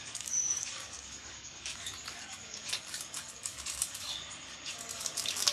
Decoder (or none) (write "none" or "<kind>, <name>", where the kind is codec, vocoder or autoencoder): codec, DAC